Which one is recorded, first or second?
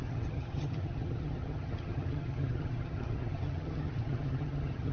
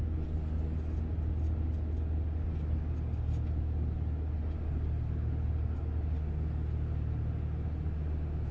second